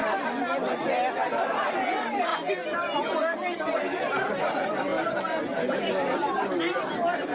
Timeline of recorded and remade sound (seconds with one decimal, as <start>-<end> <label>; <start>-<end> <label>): 0.0-1.3 recorded; 1.3-2.3 remade; 2.3-3.6 recorded; 3.6-4.9 remade; 4.9-5.7 recorded; 5.7-7.3 remade